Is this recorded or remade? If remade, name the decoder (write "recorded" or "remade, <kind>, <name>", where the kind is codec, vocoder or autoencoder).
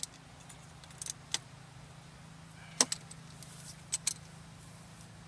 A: recorded